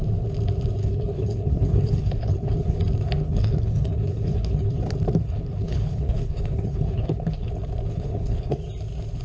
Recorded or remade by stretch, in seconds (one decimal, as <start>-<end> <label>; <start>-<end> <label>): 0.0-0.8 recorded; 0.8-2.8 remade; 2.8-3.2 recorded; 3.2-4.8 remade; 4.8-5.2 recorded; 5.2-7.5 remade; 7.5-7.9 recorded; 7.9-8.6 remade; 8.6-9.2 recorded